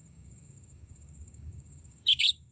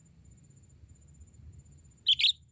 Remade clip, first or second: first